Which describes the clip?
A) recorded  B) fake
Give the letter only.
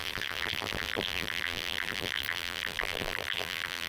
B